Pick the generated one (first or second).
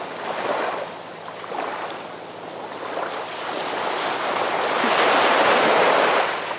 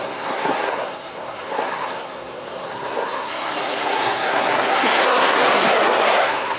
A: second